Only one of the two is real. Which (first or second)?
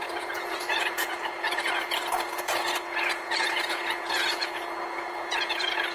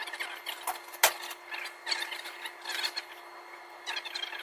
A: second